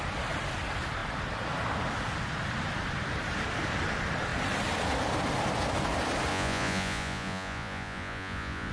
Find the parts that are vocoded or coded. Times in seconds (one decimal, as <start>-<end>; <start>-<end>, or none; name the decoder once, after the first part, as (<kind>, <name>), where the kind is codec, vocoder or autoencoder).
6.3-8.7 (vocoder, Vocos)